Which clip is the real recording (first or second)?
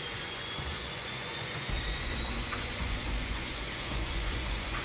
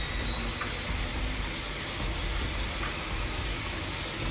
second